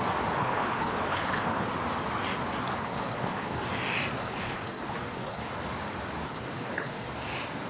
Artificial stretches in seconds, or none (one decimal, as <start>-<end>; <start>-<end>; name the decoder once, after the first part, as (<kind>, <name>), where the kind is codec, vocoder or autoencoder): 0.4-1.7 (codec, HILCodec); 2.8-3.6; 4.2-5.5; 6.2-7.1